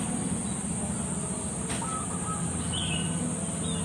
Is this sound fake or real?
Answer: real